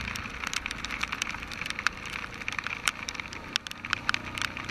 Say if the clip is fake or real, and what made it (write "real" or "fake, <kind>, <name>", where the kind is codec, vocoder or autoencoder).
real